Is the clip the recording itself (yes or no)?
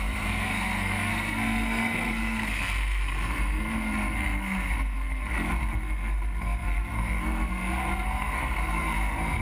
no